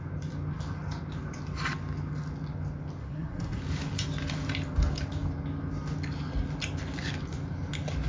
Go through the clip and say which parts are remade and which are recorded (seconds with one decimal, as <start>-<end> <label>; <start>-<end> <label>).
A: 0.0-3.0 recorded; 3.0-3.6 remade; 3.6-8.1 recorded